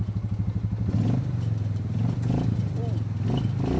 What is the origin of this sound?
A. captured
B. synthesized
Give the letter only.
A